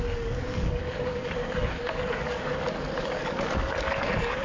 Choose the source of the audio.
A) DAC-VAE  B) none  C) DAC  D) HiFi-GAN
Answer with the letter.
C